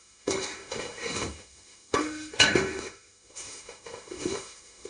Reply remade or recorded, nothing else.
remade